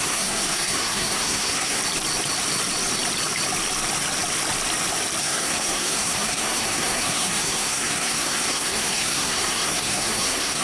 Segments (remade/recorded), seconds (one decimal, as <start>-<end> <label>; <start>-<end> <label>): 0.0-1.8 remade; 1.8-5.2 recorded; 5.2-10.6 remade